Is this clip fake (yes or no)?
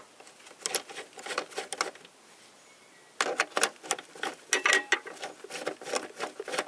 no